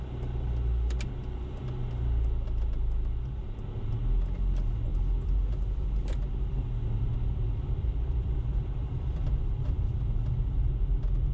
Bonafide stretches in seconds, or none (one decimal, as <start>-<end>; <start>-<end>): 0.0-4.9; 10.0-11.3